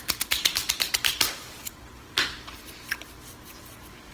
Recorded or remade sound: recorded